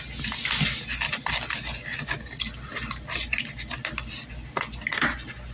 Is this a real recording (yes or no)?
yes